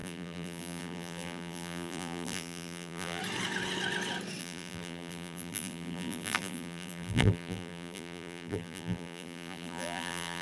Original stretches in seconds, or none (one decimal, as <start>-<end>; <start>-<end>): 3.2-4.4